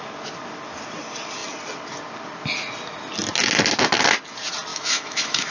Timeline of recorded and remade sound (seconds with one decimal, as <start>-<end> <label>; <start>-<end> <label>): 0.0-4.7 recorded; 4.7-5.5 remade